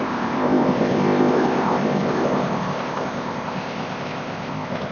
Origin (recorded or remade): remade